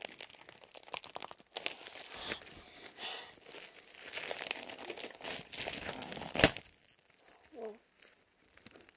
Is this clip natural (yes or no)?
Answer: yes